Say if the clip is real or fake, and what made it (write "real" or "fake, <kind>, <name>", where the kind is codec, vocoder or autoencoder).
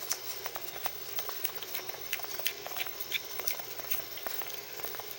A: fake, codec, SNAC